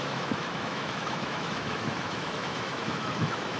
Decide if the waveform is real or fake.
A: fake